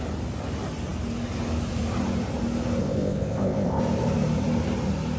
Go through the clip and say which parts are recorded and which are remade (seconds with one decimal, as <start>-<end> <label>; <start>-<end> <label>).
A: 0.0-2.8 recorded; 2.8-3.8 remade; 3.8-5.2 recorded